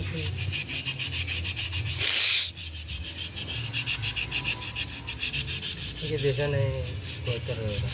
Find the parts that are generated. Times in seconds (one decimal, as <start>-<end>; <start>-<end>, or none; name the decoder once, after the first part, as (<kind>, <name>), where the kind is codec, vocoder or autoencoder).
none